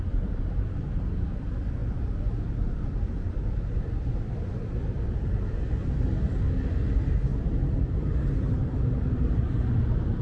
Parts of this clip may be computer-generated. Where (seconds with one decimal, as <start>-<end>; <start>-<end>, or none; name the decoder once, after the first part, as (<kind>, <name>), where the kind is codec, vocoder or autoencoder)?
7.3-9.7 (vocoder, BigVGAN v2)